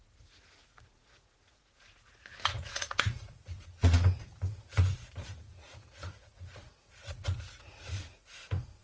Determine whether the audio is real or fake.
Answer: fake